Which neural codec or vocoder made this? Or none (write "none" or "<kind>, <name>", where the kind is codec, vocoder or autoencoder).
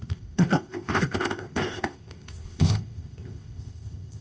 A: codec, ZipCodec